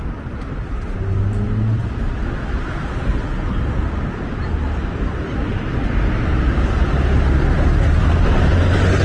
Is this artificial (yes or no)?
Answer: no